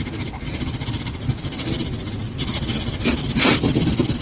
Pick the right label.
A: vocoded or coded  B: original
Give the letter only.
B